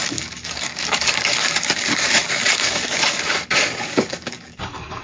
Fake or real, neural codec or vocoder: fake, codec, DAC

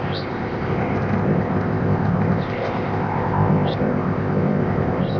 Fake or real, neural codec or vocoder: fake, codec, ZipCodec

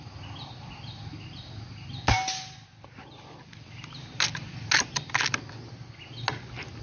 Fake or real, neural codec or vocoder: real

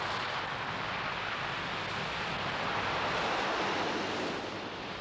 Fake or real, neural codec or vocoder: real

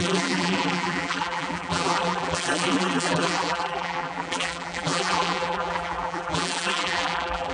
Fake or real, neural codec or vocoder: fake, vocoder, BigVGAN v2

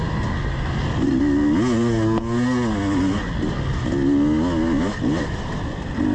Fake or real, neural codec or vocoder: real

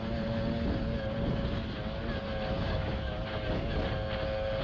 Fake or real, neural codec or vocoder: real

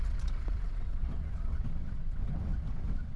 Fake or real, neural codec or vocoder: fake, vocoder, WaveNeXt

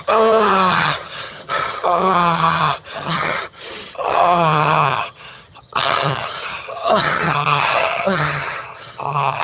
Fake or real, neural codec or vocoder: fake, vocoder, HiFi-GAN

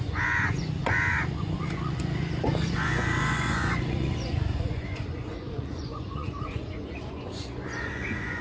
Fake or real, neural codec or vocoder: fake, vocoder, Vocos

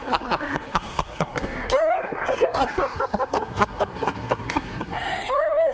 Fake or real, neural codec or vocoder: fake, codec, SNAC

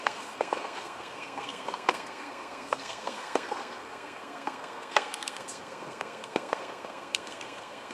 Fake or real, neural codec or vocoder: fake, codec, SNAC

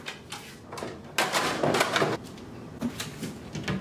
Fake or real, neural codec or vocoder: real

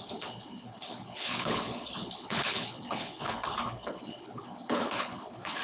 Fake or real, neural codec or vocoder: fake, codec, HILCodec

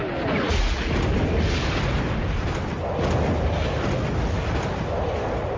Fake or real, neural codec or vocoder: real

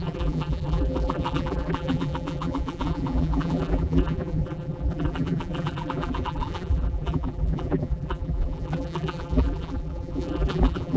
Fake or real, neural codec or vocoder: fake, vocoder, BigVGAN v2